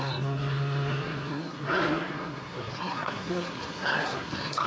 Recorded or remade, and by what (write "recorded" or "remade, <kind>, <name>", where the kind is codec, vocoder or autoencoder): remade, codec, SNAC